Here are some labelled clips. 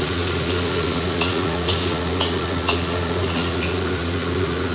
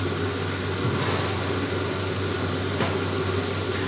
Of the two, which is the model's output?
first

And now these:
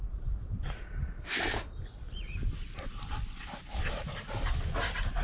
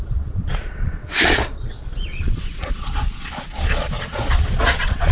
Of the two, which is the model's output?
second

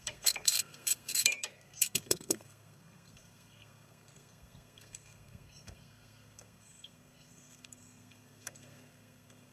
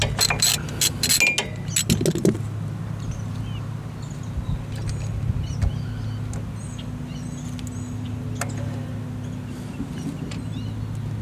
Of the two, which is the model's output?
first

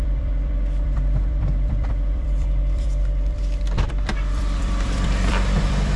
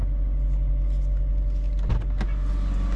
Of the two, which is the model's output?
first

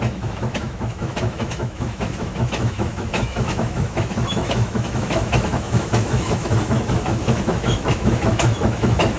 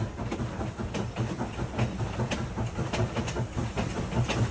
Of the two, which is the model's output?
first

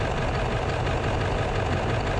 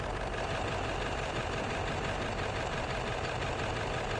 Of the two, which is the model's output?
second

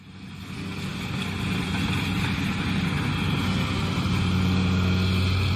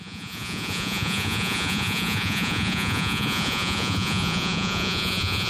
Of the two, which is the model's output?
second